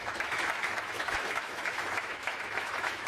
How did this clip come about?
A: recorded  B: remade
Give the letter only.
B